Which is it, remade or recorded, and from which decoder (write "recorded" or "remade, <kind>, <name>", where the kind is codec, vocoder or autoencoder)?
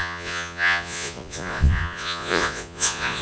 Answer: remade, vocoder, Vocos